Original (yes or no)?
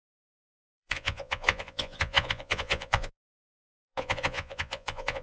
no